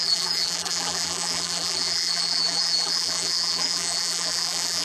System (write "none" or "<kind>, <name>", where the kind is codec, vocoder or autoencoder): vocoder, BigVGAN v2